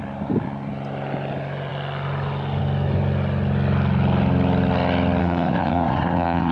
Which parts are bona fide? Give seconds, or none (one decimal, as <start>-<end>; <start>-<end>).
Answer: 0.0-5.2